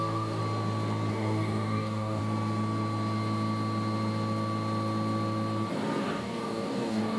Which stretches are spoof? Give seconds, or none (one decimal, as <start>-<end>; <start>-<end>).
0.0-0.4; 1.1-2.2; 6.0-7.2